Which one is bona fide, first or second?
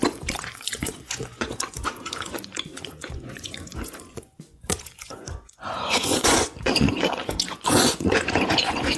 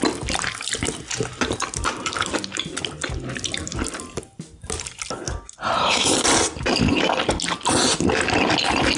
second